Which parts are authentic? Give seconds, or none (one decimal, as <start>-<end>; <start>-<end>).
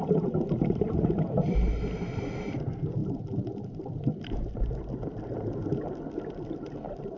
0.0-7.2